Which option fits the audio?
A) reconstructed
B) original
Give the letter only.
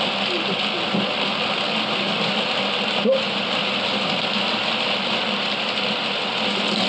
B